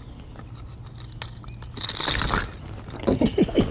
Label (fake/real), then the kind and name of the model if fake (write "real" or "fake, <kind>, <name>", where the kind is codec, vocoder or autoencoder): real